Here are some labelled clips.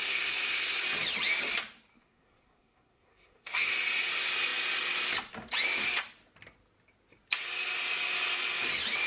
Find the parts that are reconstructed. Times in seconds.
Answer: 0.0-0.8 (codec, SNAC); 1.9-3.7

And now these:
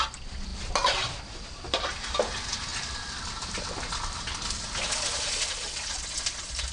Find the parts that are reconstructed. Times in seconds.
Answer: none

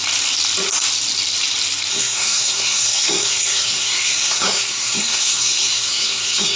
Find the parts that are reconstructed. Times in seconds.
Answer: 1.9-6.6 (codec, SNAC)

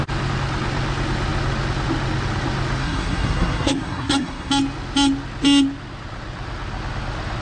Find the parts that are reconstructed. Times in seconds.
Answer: 2.8-4.5 (codec, SNAC)

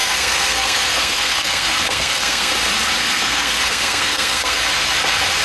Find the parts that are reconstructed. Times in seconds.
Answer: 0.0-2.5 (codec, SNAC); 3.0-4.6